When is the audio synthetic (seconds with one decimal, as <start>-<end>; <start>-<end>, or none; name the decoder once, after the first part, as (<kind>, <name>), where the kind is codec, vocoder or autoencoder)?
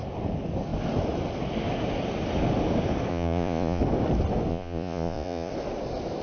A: 3.1-3.8 (vocoder, Vocos); 4.5-5.5